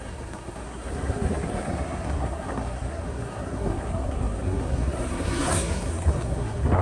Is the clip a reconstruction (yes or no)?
yes